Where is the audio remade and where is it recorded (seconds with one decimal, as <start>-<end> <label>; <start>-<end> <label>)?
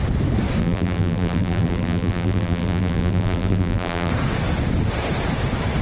0.0-0.6 recorded; 0.6-4.1 remade; 4.1-5.8 recorded